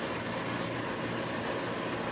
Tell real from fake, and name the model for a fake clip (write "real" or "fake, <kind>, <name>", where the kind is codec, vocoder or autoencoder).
real